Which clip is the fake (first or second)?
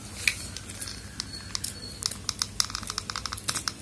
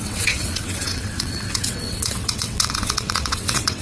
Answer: second